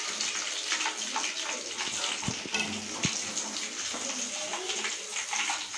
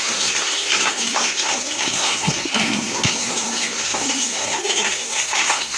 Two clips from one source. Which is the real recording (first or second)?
first